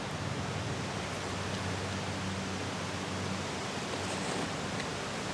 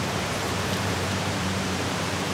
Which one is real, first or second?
first